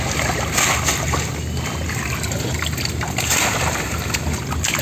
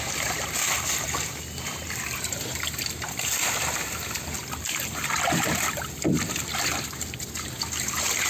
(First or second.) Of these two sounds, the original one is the first